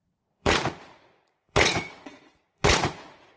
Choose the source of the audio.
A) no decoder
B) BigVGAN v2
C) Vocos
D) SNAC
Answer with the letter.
C